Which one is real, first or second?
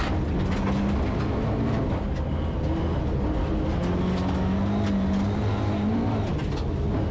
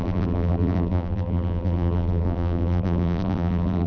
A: first